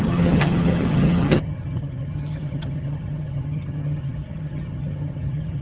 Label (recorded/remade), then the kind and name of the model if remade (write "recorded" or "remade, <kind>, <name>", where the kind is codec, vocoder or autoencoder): remade, vocoder, HiFi-GAN